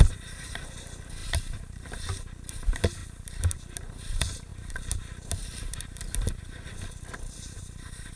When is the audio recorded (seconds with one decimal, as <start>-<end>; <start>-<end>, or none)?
0.0-1.2; 2.1-3.0; 3.6-4.5; 6.4-8.2